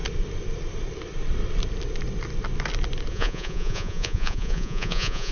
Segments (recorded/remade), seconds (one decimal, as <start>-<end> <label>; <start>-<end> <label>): 0.0-3.1 recorded; 3.1-5.3 remade